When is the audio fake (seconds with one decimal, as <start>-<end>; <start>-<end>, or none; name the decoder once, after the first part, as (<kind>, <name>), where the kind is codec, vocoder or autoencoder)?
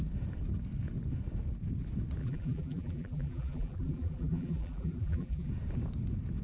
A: 2.2-5.5 (vocoder, BigVGAN v2)